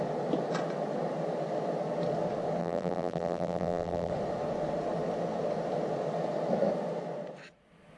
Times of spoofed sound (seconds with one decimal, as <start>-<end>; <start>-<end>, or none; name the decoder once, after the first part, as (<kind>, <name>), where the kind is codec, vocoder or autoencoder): 2.6-4.1 (vocoder, BigVGAN v2)